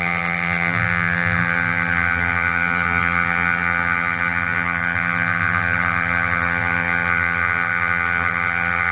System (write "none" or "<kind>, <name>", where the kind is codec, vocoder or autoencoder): vocoder, BigVGAN v2